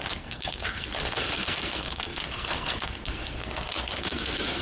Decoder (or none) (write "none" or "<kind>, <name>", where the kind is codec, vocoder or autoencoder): codec, SNAC